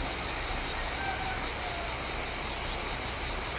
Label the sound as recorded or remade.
recorded